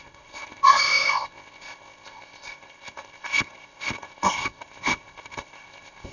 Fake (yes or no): yes